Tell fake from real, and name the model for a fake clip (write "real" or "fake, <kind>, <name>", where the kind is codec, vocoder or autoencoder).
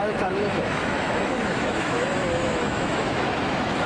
fake, autoencoder, DAC-VAE